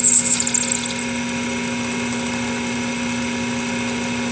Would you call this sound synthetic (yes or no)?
no